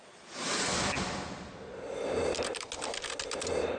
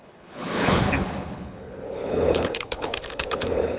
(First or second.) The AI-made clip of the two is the second